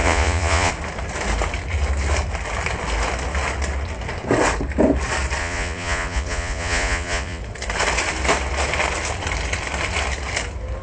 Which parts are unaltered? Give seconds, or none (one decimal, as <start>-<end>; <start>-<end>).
0.7-5.4; 7.4-10.8